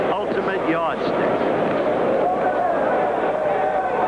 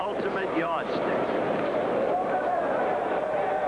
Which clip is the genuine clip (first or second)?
first